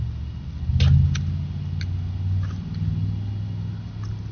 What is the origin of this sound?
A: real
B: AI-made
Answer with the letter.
A